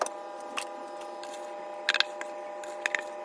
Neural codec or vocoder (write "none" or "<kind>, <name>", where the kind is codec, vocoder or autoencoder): none